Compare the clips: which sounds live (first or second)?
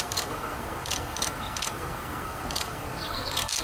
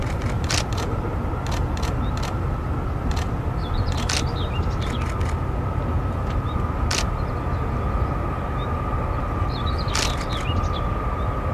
second